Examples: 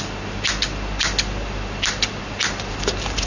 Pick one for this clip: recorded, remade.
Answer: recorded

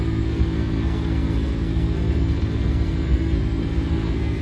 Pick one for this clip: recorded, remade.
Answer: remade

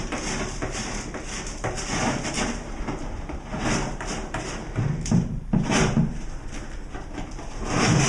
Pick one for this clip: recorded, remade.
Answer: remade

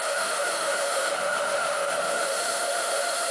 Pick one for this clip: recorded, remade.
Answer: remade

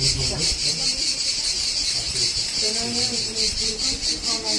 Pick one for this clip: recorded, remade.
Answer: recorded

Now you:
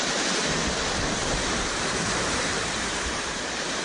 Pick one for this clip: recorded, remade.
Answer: remade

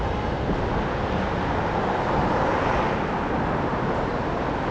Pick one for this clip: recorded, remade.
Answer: recorded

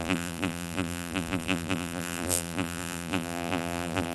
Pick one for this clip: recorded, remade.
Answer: remade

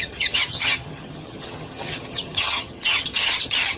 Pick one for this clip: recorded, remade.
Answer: remade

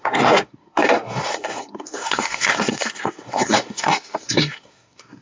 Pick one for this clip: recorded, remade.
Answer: remade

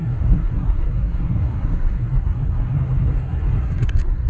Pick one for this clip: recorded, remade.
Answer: remade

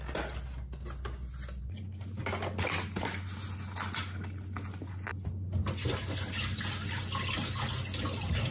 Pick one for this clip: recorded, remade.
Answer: recorded